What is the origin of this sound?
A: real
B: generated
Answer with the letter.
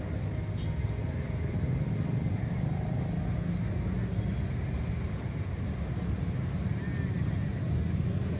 A